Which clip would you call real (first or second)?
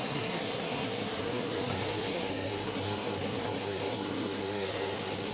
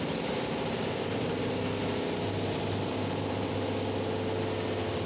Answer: second